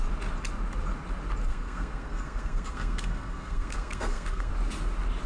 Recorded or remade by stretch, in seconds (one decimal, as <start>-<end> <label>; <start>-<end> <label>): 0.0-1.5 recorded; 1.5-4.5 remade; 4.5-5.3 recorded